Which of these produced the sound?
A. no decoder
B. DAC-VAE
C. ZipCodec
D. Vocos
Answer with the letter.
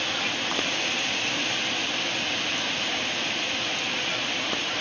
A